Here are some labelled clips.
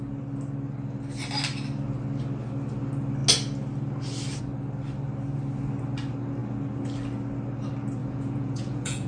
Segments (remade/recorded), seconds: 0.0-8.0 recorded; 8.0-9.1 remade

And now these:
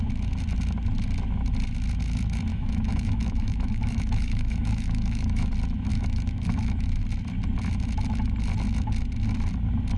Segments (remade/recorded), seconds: 0.0-2.5 recorded; 2.5-5.5 remade; 5.5-5.9 recorded; 5.9-7.0 remade; 7.0-10.0 recorded